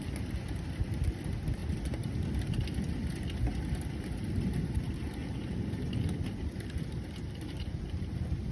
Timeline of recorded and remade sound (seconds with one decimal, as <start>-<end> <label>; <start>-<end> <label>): 0.0-5.2 recorded; 5.2-8.5 remade